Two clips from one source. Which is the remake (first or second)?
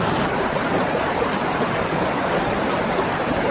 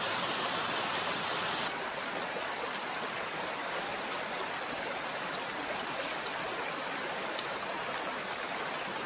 first